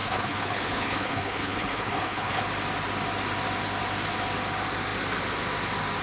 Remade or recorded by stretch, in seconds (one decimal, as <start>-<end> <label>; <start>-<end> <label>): 0.0-2.4 remade; 2.4-6.0 recorded